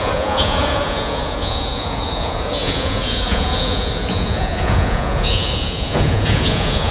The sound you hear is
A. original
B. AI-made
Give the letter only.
B